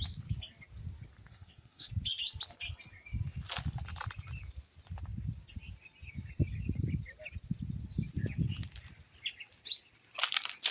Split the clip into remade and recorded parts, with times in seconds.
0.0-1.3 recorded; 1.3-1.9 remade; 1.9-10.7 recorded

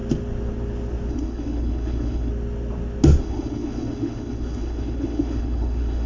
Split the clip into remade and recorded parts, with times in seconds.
0.0-1.1 recorded; 1.1-2.3 remade; 2.3-3.2 recorded; 3.2-6.1 remade

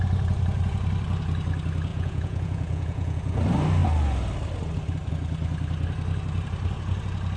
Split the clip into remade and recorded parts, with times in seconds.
0.0-1.9 recorded; 1.9-3.4 remade; 3.4-7.4 recorded

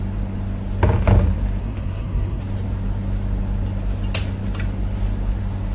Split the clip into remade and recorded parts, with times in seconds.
0.0-1.6 recorded; 1.6-2.4 remade; 2.4-5.7 recorded